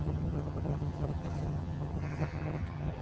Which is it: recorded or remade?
remade